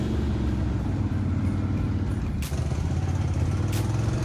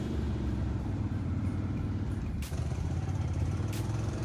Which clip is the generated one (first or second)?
second